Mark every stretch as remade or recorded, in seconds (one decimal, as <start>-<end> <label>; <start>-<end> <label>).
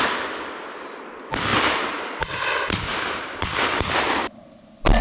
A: 0.0-5.0 recorded